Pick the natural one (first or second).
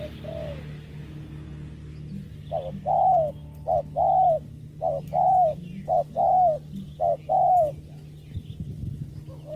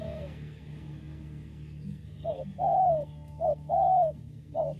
first